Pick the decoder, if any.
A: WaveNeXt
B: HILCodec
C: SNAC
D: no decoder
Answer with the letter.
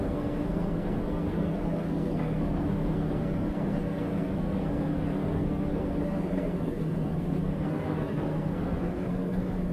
C